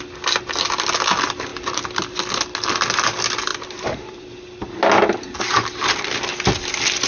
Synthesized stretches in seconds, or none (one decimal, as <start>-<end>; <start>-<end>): 3.5-4.3